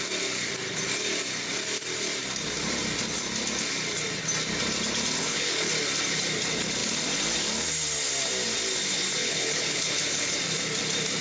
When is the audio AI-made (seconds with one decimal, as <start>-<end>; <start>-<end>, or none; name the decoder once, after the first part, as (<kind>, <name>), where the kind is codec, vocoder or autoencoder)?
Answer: 5.2-5.7 (codec, HILCodec); 9.2-10.3